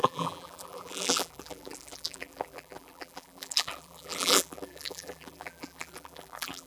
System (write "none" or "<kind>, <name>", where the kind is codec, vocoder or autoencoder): vocoder, BigVGAN v2